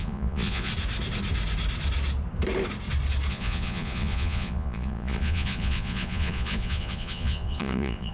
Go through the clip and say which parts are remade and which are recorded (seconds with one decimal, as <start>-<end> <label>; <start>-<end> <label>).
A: 0.0-0.7 remade; 0.7-3.3 recorded; 3.3-8.1 remade